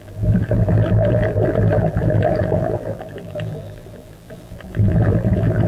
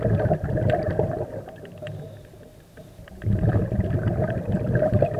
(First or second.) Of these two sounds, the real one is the second